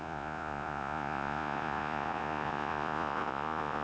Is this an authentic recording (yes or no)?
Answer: no